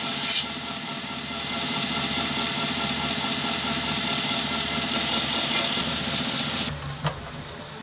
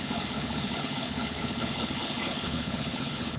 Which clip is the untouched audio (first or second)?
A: first